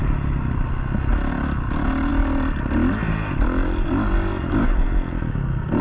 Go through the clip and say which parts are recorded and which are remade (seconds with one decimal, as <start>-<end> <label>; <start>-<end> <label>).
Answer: 0.0-5.8 recorded